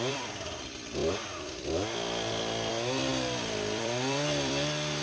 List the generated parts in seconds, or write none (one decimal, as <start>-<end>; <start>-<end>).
0.0-1.0; 2.7-5.0